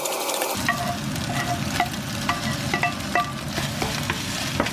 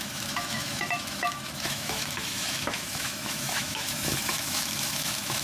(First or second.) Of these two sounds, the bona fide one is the first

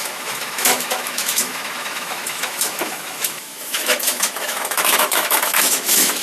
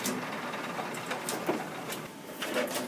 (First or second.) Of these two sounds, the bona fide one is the second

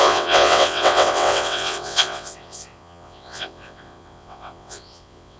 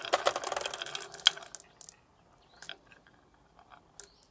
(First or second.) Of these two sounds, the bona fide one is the second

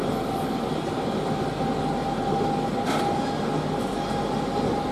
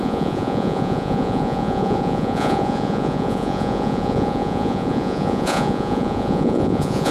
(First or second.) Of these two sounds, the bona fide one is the first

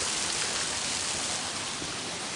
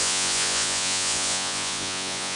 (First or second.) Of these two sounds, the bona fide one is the first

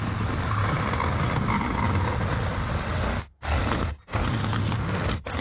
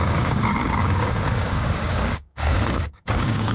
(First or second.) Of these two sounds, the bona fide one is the first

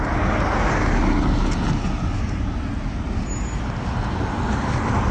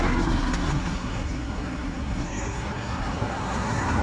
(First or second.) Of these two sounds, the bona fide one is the first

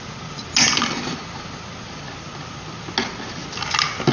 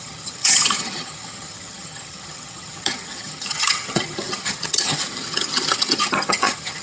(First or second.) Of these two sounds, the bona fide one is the first